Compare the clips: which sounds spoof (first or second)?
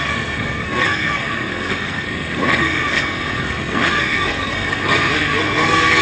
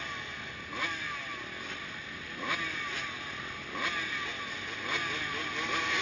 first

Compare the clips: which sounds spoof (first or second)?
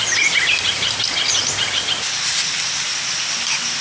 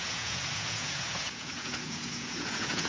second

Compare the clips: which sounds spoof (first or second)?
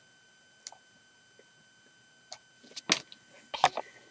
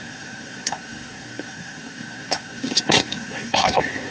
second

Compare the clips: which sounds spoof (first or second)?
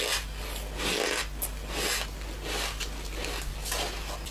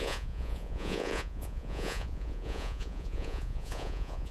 second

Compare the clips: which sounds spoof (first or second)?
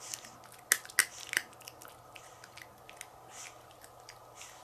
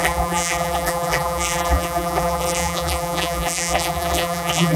second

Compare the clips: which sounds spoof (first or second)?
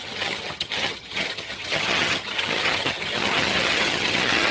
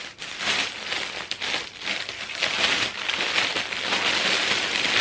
first